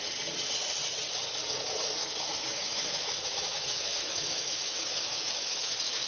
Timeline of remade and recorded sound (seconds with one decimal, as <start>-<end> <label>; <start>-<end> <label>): 0.0-2.0 recorded; 2.0-6.1 remade